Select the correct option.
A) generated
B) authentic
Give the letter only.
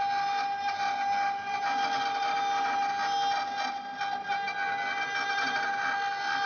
B